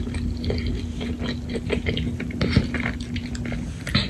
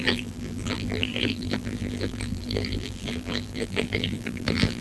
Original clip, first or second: first